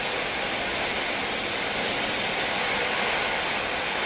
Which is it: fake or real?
real